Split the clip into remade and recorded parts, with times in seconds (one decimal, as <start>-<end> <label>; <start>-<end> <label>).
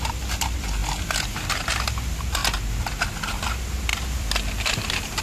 0.0-5.2 recorded